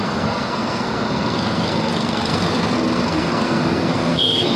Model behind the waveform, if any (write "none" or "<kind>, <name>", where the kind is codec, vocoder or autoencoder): codec, SNAC